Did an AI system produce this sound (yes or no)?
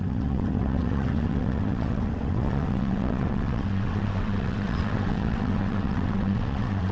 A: yes